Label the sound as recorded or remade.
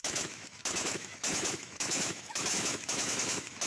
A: remade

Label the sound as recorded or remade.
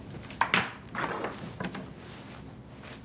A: recorded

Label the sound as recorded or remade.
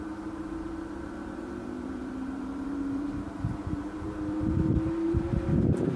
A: remade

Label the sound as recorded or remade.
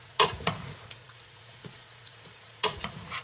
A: remade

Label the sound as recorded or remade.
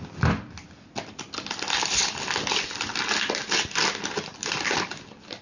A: recorded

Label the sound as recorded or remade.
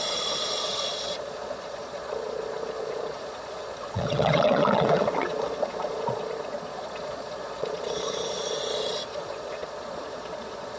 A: remade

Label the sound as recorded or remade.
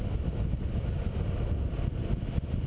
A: recorded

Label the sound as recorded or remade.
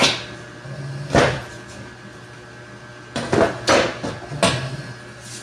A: recorded